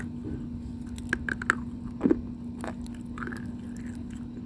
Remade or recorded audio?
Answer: recorded